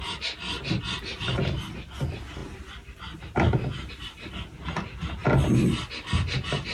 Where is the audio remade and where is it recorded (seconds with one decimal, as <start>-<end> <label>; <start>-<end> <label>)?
0.0-6.7 recorded